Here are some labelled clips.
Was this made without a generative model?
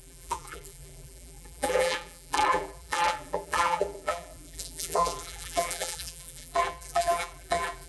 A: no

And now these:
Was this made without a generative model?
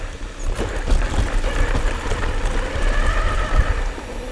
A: yes